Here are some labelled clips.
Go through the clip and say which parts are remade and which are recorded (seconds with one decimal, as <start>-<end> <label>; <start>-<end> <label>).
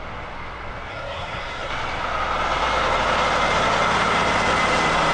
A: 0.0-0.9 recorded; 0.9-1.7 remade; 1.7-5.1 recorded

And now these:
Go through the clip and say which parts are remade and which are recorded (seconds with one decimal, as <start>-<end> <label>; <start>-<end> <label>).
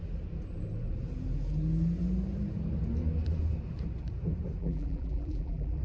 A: 0.0-4.6 recorded; 4.6-5.8 remade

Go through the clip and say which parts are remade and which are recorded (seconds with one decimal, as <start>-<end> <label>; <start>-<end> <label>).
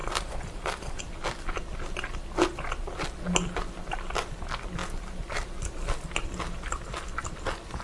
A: 0.0-1.0 remade; 1.0-7.8 recorded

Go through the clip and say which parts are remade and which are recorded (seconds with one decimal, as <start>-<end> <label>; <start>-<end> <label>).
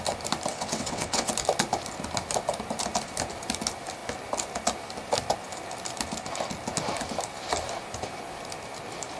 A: 0.0-0.5 recorded; 0.5-1.3 remade; 1.3-9.2 recorded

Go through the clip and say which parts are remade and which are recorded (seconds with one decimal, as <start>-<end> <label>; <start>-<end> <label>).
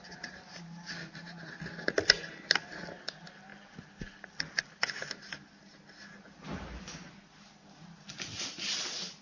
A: 0.0-0.6 remade; 0.6-9.2 recorded